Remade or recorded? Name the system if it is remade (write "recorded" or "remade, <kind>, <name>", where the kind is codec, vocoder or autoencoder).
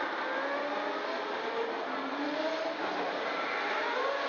recorded